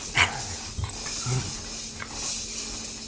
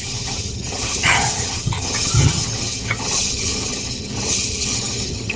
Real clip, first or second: first